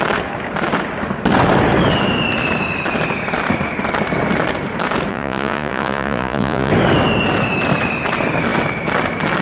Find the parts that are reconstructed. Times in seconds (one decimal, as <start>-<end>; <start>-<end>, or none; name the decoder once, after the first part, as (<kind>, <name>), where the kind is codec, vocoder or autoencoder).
5.1-6.7 (vocoder, Vocos)